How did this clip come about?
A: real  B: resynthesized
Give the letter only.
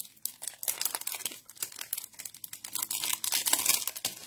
A